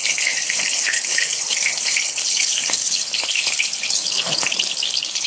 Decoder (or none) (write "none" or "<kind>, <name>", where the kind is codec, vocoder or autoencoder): codec, HILCodec